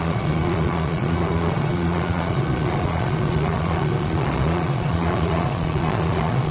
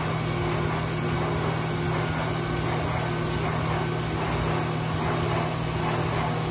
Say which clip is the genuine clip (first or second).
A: second